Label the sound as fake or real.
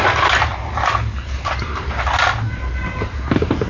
real